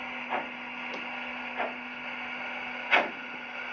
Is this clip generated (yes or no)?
no